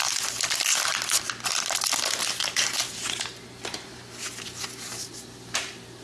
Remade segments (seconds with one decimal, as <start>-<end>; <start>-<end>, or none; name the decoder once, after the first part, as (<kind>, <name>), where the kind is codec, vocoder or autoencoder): none